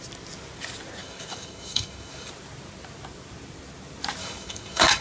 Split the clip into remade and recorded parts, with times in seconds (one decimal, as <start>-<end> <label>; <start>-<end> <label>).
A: 0.0-1.0 recorded; 1.0-2.3 remade; 2.3-4.2 recorded; 4.2-5.0 remade